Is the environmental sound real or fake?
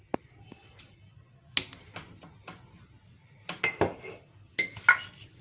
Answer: real